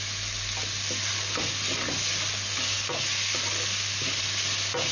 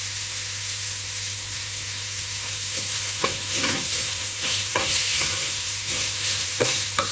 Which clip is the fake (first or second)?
second